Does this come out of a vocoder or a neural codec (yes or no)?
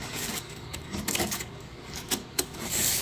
yes